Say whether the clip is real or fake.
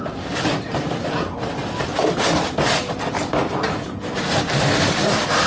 real